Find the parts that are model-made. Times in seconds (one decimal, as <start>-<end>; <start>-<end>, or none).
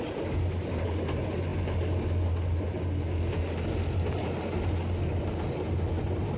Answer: none